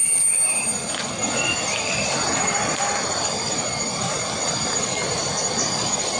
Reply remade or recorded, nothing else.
recorded